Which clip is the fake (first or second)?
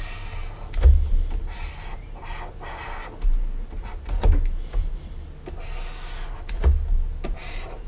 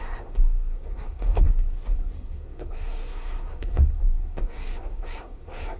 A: second